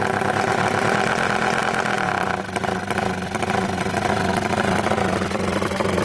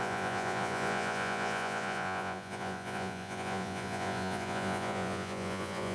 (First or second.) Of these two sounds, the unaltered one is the first